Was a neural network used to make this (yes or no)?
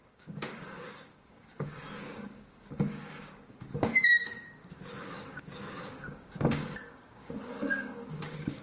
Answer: yes